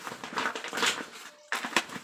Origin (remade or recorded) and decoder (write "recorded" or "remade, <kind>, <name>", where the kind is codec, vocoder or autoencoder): remade, vocoder, BigVGAN v2